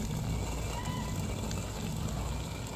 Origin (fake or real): real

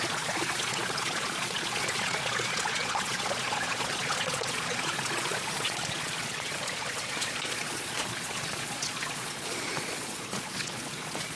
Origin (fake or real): fake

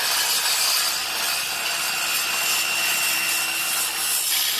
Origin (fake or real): real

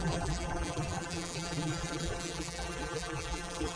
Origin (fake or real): fake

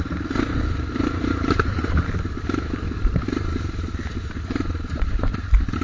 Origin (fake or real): fake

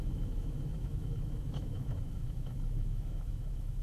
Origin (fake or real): fake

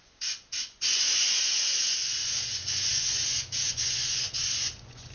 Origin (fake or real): fake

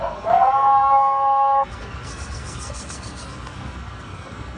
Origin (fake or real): fake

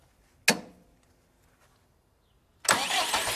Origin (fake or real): real